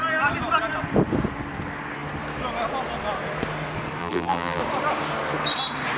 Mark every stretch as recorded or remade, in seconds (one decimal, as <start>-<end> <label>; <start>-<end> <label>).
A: 0.0-4.0 recorded; 4.0-4.6 remade; 4.6-6.0 recorded